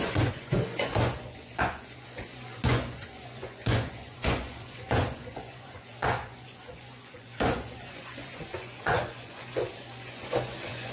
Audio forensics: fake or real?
fake